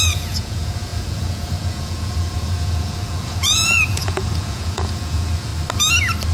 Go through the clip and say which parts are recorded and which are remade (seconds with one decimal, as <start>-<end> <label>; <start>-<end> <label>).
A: 0.0-5.5 remade; 5.5-6.3 recorded